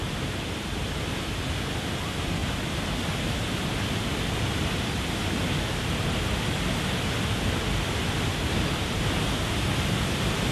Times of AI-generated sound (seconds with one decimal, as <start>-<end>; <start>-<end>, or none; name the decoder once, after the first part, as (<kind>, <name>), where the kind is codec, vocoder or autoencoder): none